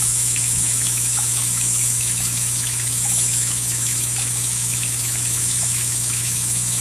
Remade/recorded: remade